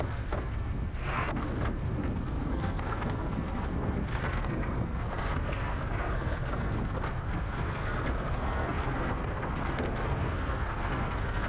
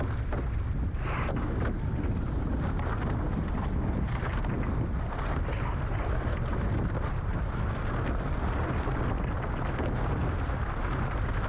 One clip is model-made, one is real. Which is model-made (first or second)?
first